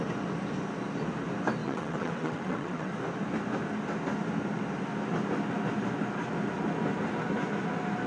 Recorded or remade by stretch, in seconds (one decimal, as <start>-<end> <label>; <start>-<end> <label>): 0.0-1.6 recorded; 1.6-2.9 remade; 2.9-8.1 recorded